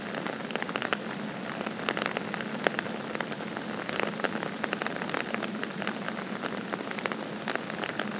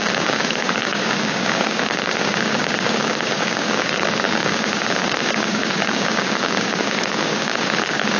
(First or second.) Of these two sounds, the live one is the first